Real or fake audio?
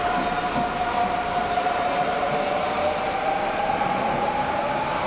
real